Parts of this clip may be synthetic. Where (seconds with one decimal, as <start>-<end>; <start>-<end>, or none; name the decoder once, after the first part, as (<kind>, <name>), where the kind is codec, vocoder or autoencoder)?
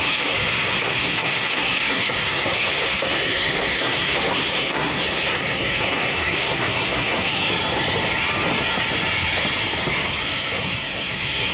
0.0-7.4 (codec, SNAC); 10.2-11.5